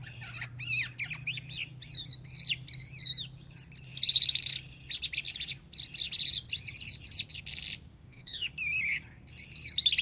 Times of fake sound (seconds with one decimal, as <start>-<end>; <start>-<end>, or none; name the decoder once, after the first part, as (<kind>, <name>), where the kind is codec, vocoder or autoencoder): 7.9-8.5 (autoencoder, DAC-VAE)